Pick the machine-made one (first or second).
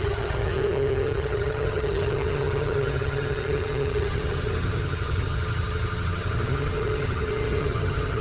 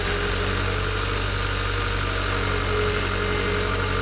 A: first